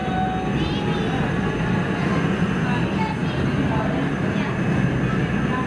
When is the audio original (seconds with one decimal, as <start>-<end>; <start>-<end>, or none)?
0.0-5.7